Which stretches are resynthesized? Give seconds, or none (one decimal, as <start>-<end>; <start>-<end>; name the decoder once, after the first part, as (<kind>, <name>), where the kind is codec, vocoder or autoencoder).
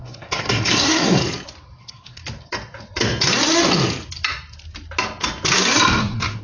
0.0-1.2 (codec, SNAC); 1.8-2.2; 6.0-6.4